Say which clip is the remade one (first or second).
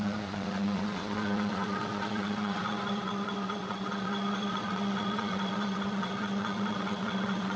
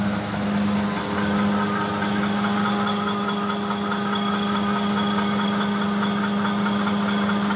first